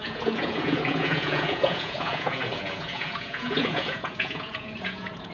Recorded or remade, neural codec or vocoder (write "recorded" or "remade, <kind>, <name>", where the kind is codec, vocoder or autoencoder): remade, vocoder, Vocos